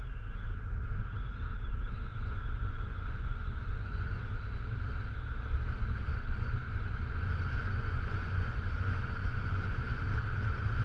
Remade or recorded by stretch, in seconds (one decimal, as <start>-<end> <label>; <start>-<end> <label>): 0.0-2.1 recorded; 2.1-4.2 remade; 4.2-6.1 recorded; 6.1-10.1 remade; 10.1-10.8 recorded